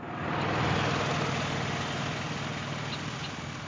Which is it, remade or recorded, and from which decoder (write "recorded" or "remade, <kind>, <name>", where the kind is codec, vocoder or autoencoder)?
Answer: recorded